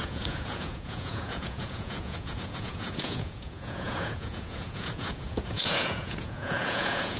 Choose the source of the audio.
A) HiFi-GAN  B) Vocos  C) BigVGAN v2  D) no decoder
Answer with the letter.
B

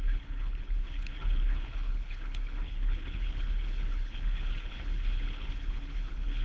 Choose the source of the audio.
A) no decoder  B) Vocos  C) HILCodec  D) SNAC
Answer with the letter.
C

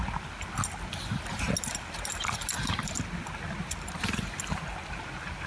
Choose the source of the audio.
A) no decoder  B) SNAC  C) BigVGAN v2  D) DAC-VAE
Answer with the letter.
A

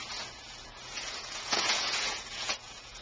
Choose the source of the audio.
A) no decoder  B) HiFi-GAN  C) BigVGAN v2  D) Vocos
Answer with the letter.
D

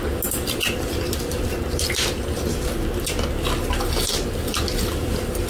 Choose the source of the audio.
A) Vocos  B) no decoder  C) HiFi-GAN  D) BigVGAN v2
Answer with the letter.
B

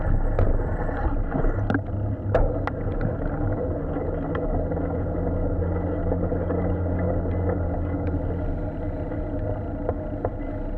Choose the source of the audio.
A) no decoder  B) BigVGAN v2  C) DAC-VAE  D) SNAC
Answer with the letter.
A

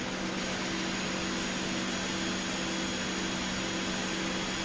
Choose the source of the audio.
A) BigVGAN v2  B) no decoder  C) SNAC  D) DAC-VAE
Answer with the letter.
B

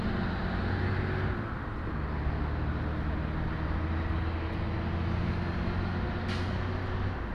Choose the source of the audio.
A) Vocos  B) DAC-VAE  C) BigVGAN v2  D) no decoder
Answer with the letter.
D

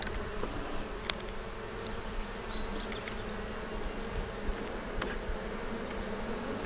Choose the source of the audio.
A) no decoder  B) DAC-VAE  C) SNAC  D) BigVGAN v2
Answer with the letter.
A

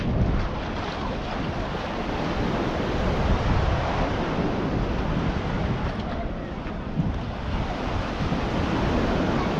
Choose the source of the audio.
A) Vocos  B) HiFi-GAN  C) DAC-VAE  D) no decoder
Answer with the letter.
D